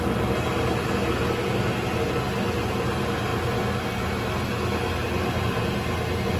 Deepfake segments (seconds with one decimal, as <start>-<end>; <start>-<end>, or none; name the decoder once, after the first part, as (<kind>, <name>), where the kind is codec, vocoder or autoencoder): none